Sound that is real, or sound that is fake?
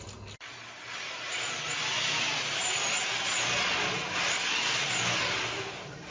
real